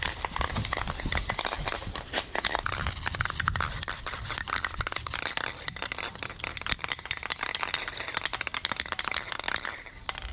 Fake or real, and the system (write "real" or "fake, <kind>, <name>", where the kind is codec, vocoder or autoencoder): real